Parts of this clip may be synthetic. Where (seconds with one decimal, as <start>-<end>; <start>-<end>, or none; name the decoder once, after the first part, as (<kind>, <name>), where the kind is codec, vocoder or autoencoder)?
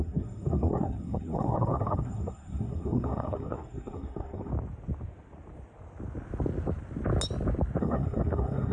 0.0-4.5 (codec, SNAC); 7.8-8.7